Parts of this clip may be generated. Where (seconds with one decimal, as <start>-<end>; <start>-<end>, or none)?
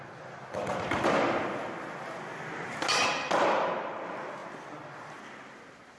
none